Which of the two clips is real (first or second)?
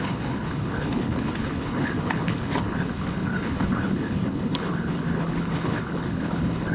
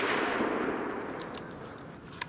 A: second